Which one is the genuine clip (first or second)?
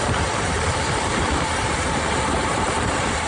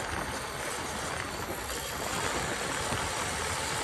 second